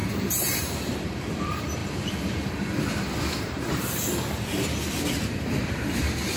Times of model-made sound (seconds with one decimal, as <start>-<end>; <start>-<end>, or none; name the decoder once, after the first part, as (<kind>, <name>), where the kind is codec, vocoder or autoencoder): 0.0-1.8 (vocoder, BigVGAN v2); 5.6-6.4